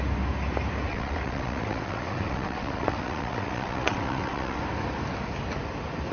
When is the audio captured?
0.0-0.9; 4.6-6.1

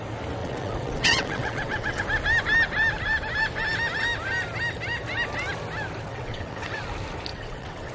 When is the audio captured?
0.0-0.4; 2.0-6.1; 6.8-7.3

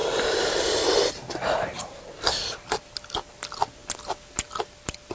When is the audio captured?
0.0-5.1

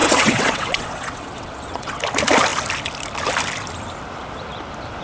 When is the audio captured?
2.0-5.0

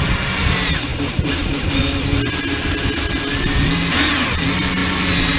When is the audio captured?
0.0-5.4

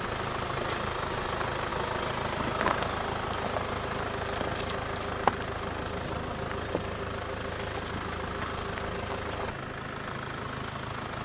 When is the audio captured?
0.0-11.2

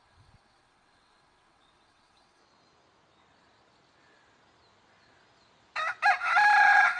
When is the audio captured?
2.4-6.6